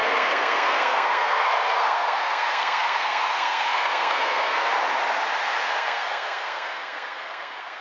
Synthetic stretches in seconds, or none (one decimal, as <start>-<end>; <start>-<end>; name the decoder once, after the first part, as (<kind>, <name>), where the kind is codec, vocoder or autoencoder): 0.0-4.7 (codec, SNAC); 5.7-7.8